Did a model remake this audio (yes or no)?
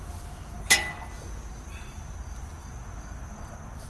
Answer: no